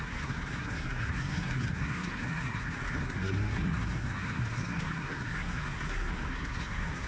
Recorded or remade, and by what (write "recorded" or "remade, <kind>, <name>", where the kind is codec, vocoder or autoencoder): remade, codec, SNAC